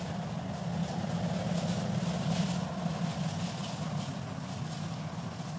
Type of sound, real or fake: real